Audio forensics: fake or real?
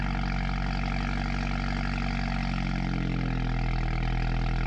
real